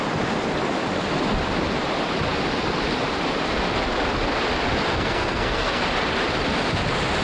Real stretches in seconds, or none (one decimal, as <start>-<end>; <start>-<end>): 0.0-4.9; 5.8-7.2

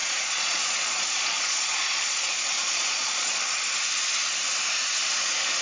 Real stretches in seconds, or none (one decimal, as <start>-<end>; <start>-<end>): 3.4-5.6

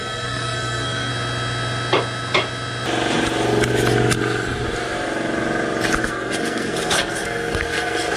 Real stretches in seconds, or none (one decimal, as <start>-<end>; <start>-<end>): 1.1-6.0